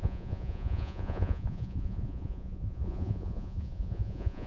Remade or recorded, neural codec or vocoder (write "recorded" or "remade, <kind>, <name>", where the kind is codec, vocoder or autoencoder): remade, vocoder, Vocos